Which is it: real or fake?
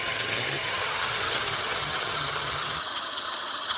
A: fake